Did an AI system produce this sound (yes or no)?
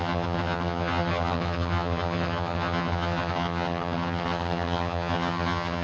yes